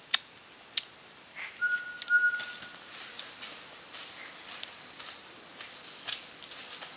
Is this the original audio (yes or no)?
yes